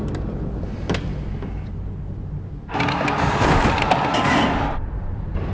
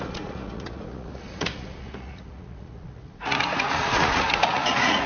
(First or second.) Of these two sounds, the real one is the first